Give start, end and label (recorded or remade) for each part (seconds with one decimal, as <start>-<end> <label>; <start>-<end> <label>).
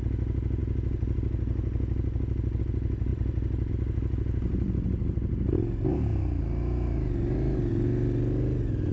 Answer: 0.0-3.1 recorded; 3.1-3.7 remade; 3.7-8.9 recorded